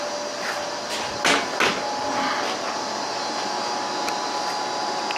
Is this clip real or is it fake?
real